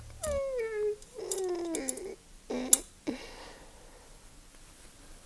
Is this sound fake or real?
real